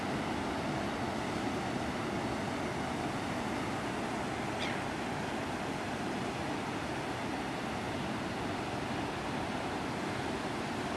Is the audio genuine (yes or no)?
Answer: yes